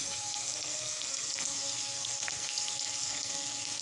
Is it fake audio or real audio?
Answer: fake